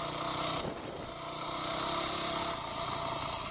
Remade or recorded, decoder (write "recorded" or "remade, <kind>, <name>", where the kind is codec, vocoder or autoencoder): recorded